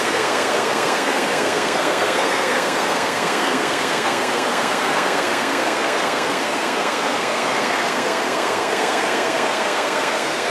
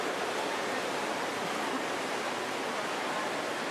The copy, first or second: first